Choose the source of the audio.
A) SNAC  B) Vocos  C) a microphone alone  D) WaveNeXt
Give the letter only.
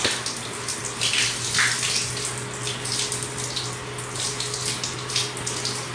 C